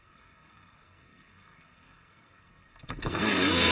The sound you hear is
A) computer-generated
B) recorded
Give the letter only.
A